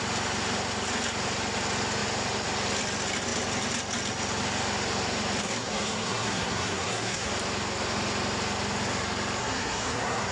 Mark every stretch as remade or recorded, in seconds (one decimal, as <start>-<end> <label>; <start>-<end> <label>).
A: 0.0-5.4 recorded; 5.4-7.3 remade; 7.3-9.4 recorded; 9.4-10.3 remade